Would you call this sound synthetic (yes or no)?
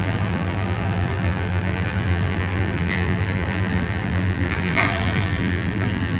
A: yes